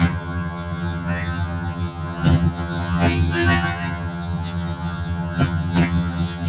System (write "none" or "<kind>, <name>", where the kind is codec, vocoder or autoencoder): vocoder, HiFi-GAN